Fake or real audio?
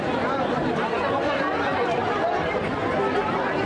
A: real